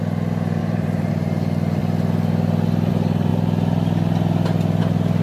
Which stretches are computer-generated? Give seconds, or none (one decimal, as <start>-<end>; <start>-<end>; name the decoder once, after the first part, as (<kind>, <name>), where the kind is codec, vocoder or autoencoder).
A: 0.6-1.1 (vocoder, BigVGAN v2)